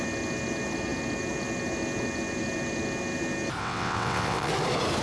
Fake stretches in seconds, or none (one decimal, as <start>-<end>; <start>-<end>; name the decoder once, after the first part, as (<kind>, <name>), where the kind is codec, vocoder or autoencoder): 3.6-4.5 (vocoder, WaveNeXt)

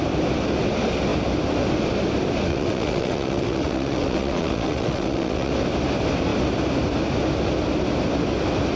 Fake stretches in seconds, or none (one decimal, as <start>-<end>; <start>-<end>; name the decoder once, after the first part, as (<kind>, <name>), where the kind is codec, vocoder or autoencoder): 2.5-5.5 (vocoder, WaveNeXt)

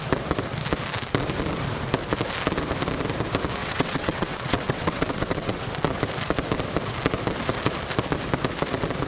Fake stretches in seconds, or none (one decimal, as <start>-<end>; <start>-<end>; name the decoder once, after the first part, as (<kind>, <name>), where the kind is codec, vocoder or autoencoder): 3.6-5.7 (vocoder, WaveNeXt)